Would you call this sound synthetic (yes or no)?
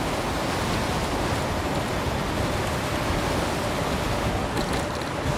no